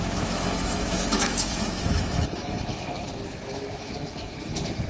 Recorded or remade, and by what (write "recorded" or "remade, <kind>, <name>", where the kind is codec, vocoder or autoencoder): remade, autoencoder, DAC-VAE